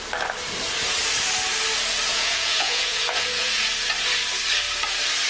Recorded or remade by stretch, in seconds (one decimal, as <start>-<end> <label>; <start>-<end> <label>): 0.0-2.1 recorded; 2.1-3.6 remade; 3.6-5.3 recorded